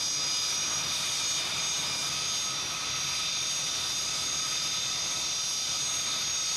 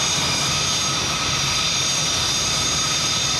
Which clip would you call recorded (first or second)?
first